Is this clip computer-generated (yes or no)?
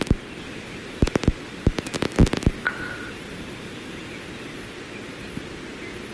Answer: no